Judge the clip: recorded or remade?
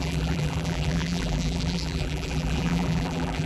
remade